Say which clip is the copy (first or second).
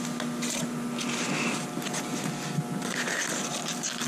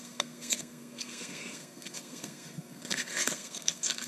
second